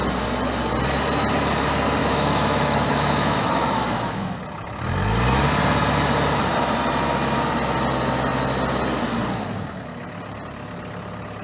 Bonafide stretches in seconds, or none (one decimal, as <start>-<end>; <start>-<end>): 0.0-2.0; 4.4-11.4